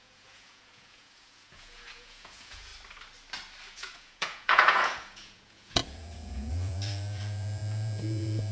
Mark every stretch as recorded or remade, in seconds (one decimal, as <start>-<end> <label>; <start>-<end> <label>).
0.0-2.7 remade; 2.7-3.7 recorded; 3.7-8.5 remade

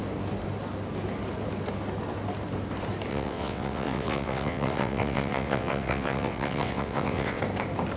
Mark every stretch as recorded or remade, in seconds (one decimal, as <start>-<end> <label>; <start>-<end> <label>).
0.0-3.1 recorded; 3.1-7.4 remade; 7.4-8.0 recorded

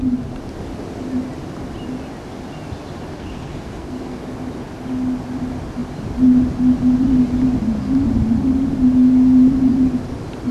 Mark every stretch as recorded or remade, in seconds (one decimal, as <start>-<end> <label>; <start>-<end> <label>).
0.0-3.1 recorded; 3.1-4.2 remade; 4.2-10.5 recorded

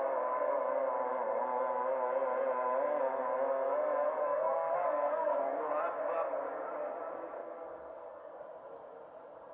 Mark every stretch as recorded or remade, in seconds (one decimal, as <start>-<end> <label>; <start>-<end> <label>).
0.0-4.2 recorded; 4.2-5.7 remade; 5.7-7.4 recorded; 7.4-8.4 remade; 8.4-9.5 recorded

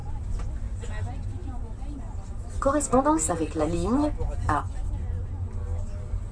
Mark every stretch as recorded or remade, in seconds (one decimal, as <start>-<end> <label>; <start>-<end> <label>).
0.0-6.3 recorded

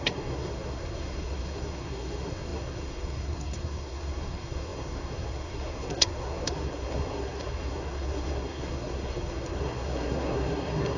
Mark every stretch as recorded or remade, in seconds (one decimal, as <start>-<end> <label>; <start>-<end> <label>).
0.0-11.0 remade

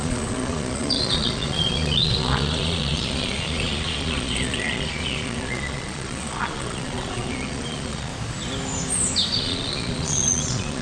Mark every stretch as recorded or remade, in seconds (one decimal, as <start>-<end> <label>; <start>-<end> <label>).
0.0-8.1 remade; 8.1-9.4 recorded; 9.4-10.8 remade